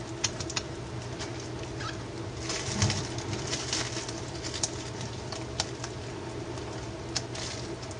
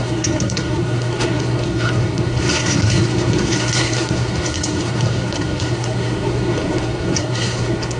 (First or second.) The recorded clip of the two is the first